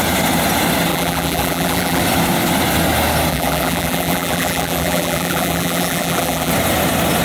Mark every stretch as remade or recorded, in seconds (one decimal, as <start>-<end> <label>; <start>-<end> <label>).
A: 0.0-0.9 recorded; 0.9-2.0 remade; 2.0-3.3 recorded; 3.3-6.5 remade; 6.5-7.2 recorded